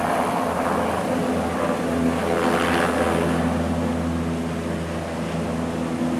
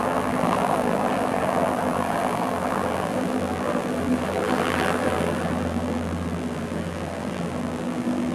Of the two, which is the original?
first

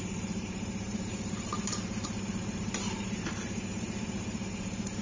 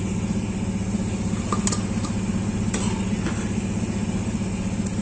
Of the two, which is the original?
second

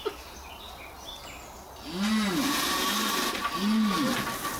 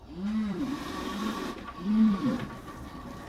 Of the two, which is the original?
first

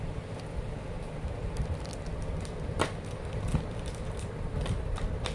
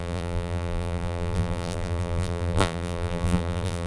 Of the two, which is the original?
first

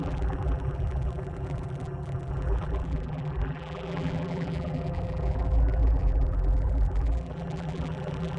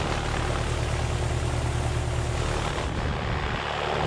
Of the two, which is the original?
second